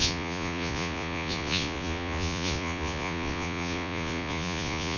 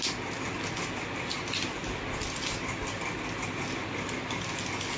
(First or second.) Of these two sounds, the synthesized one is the first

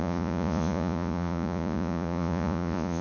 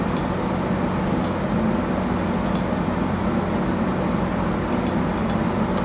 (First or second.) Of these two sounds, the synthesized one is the first